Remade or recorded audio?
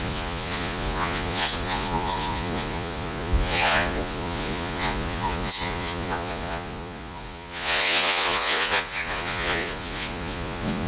remade